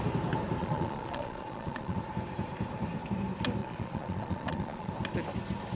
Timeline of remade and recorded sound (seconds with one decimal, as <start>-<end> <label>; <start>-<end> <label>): 0.0-0.6 recorded; 0.6-2.0 remade; 2.0-3.6 recorded; 3.6-4.9 remade; 4.9-5.8 recorded